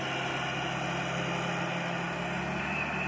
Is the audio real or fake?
real